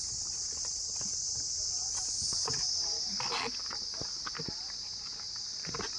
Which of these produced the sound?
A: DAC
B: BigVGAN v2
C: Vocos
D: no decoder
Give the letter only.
D